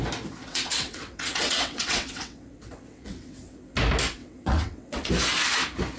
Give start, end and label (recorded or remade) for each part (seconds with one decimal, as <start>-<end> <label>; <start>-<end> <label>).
0.0-0.4 recorded; 0.4-3.7 remade; 3.7-4.2 recorded; 4.2-5.1 remade; 5.1-6.0 recorded